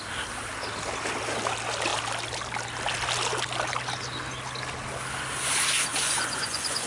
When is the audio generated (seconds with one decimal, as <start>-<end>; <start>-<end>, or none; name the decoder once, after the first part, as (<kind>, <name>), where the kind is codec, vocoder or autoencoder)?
5.9-6.9 (vocoder, Vocos)

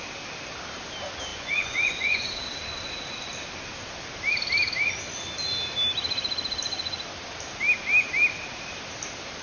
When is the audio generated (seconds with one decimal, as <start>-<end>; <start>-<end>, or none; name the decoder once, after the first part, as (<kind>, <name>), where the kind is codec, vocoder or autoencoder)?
1.3-2.3 (vocoder, Vocos)

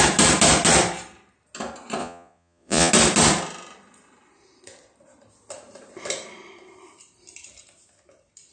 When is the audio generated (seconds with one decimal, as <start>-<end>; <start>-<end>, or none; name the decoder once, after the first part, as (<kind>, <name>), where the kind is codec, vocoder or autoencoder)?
2.0-2.9 (vocoder, Vocos)

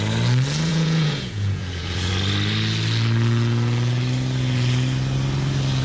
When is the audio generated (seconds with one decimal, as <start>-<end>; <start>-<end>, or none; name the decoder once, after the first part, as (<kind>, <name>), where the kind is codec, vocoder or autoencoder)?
0.7-2.1 (vocoder, Vocos)